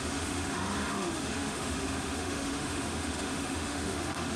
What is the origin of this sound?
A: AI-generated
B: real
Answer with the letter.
A